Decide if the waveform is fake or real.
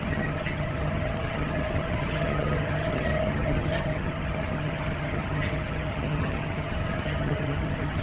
fake